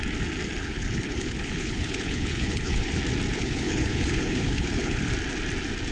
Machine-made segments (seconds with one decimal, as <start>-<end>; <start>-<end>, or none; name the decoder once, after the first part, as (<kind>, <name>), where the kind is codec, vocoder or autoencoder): 0.6-2.9 (codec, HILCodec); 3.3-5.1